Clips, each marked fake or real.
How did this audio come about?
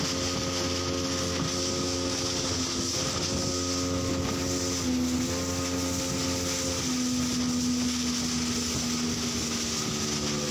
real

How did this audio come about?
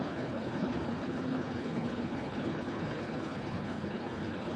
fake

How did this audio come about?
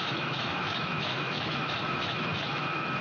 fake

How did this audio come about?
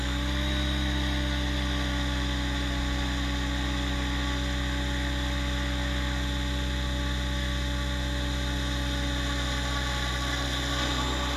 real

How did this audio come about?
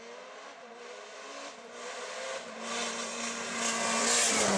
real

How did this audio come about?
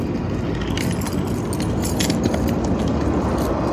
real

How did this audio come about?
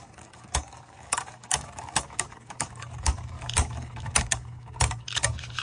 fake